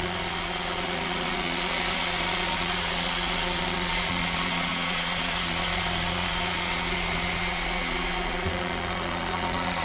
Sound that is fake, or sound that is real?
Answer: fake